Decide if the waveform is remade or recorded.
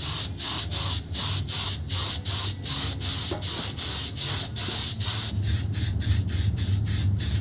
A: recorded